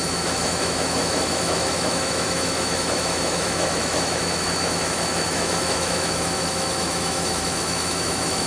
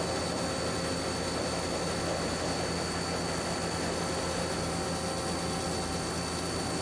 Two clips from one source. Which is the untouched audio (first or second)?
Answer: second